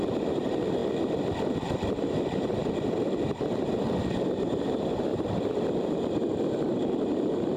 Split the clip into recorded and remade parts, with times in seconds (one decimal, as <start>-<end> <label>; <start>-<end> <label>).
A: 0.0-0.8 remade; 0.8-1.9 recorded; 1.9-2.6 remade; 2.6-4.5 recorded; 4.5-5.1 remade; 5.1-7.0 recorded; 7.0-7.6 remade

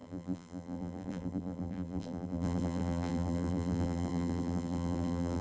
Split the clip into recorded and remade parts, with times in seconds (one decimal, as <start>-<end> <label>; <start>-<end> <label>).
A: 0.0-5.4 remade

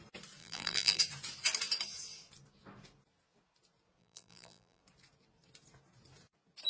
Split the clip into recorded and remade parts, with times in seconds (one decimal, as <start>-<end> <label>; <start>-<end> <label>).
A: 0.0-0.4 recorded; 0.4-1.0 remade; 1.0-4.0 recorded; 4.0-4.8 remade; 4.8-6.7 recorded